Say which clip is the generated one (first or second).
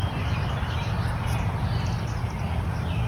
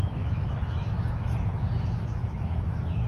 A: second